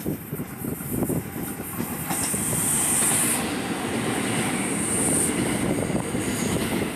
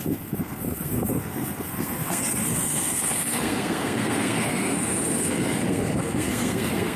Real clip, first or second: first